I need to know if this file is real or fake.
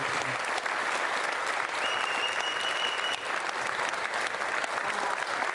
real